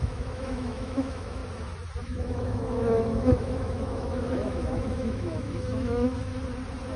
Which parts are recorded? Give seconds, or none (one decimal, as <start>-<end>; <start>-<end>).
1.4-2.0; 6.3-7.0